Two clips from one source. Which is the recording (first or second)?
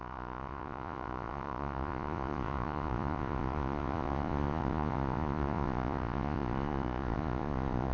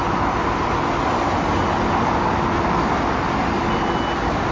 second